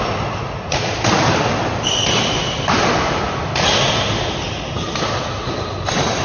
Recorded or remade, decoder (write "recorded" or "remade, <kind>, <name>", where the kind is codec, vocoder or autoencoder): recorded